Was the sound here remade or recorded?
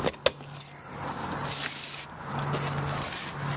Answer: recorded